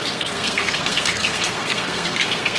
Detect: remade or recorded remade